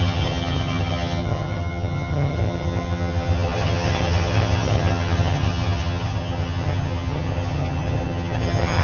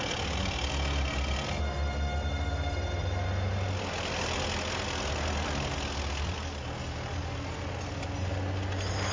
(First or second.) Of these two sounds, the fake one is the first